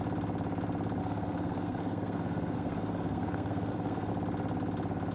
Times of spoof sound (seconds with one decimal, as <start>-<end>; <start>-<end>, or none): 1.0-4.1